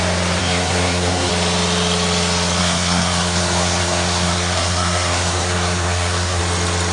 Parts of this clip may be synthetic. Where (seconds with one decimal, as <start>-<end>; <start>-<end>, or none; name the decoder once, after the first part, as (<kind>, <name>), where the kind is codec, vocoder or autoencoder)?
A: 0.4-1.3 (codec, SNAC); 2.6-6.4